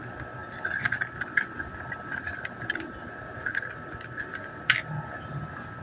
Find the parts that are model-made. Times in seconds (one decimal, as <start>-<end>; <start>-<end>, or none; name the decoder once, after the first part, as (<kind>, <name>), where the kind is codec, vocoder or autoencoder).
none